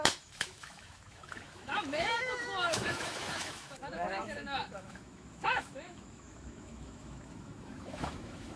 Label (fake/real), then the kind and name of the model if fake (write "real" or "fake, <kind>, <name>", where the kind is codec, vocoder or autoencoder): fake, autoencoder, DAC-VAE